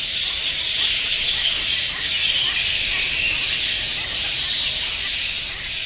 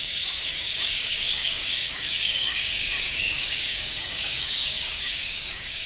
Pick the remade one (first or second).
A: second